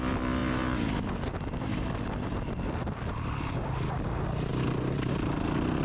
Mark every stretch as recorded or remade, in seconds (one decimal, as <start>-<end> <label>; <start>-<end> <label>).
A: 0.0-5.8 recorded